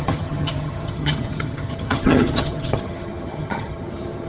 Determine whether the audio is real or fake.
fake